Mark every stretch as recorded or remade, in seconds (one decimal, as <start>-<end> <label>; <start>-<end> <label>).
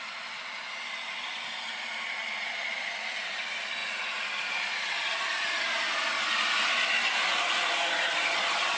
0.0-8.8 recorded